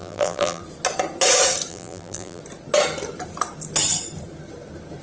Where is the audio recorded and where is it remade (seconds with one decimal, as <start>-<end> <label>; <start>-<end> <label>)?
0.0-0.6 remade; 0.6-1.7 recorded; 1.7-2.4 remade; 2.4-5.0 recorded